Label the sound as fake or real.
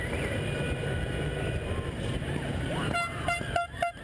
fake